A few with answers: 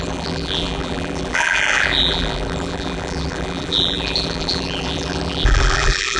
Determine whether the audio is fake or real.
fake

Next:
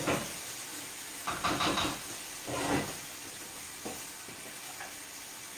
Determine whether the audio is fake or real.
real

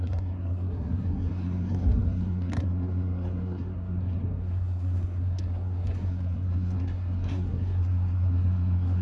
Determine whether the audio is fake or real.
fake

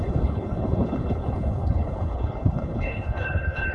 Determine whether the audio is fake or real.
fake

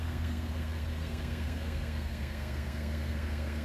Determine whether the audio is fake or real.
fake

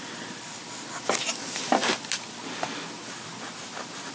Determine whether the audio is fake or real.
real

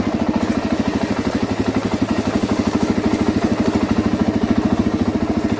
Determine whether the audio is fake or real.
real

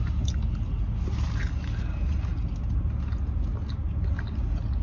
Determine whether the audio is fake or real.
real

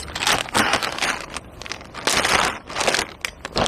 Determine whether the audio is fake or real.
real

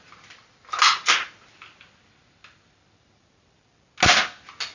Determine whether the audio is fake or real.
real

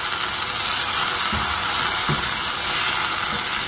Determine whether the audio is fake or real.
real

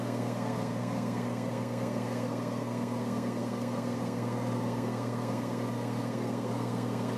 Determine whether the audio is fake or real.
fake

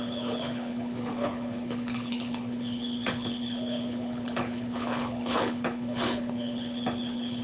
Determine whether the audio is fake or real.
fake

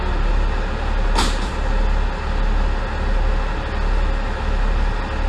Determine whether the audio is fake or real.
real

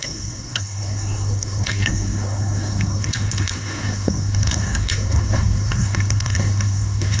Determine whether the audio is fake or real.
fake